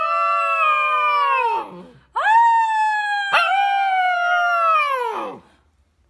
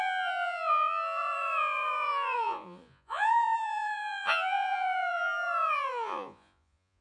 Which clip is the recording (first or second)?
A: first